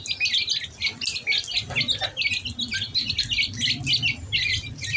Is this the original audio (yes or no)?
yes